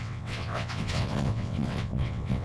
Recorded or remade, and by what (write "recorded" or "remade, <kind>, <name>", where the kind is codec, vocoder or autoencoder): remade, vocoder, WaveNeXt